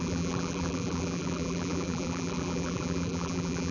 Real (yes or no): no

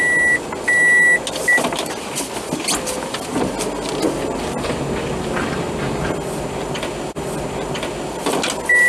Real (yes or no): yes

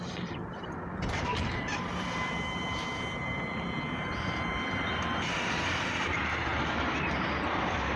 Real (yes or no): no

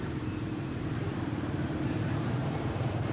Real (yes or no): no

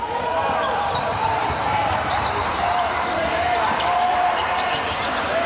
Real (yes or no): no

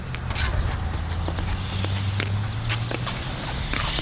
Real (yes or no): yes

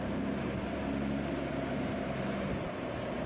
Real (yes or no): no